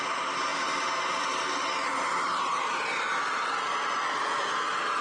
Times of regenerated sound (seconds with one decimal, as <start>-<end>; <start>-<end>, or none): none